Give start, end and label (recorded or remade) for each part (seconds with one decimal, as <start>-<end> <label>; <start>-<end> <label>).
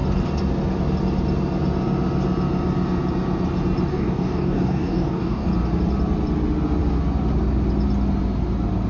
0.0-3.9 recorded; 3.9-5.5 remade; 5.5-8.9 recorded